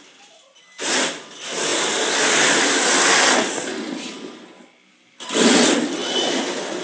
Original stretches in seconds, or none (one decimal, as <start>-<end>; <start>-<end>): 0.0-6.8